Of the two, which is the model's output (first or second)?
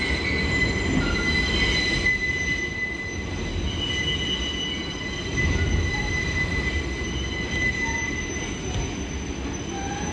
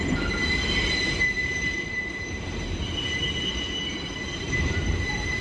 second